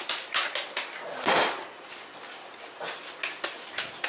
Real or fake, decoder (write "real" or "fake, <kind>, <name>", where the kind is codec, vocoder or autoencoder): real